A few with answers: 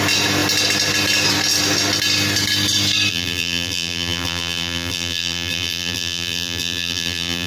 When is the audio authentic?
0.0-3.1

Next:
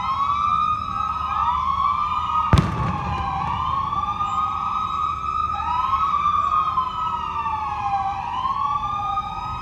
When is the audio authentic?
0.0-1.4; 2.6-5.4; 7.6-9.6

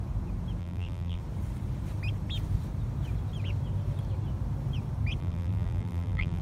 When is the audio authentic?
0.0-0.6; 1.2-5.2

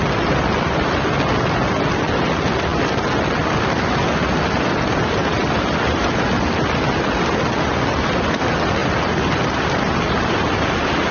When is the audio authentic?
0.0-11.1

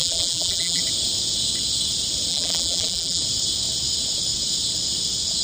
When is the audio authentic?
0.8-2.3; 3.2-5.4

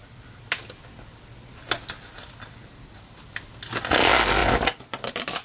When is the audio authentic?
0.0-5.4

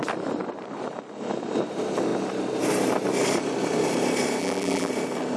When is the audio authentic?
0.0-4.4; 4.9-5.4

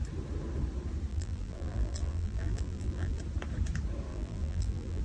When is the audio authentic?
0.0-1.1; 3.2-4.1